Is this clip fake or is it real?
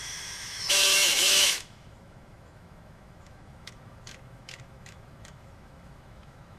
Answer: fake